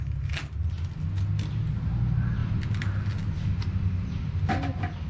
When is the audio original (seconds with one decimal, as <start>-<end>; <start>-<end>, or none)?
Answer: 0.0-2.4; 4.5-5.1